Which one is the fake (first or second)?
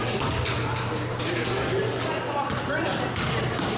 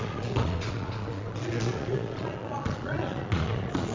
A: second